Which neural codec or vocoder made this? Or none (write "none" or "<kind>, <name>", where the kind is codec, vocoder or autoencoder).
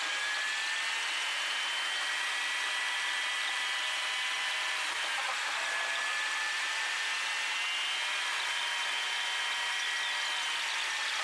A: none